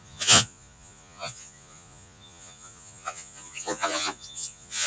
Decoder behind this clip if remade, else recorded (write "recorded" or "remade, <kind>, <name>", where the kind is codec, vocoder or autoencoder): remade, vocoder, Vocos